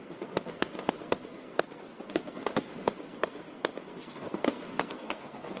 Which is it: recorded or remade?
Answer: remade